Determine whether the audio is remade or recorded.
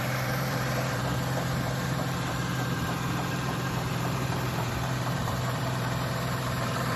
remade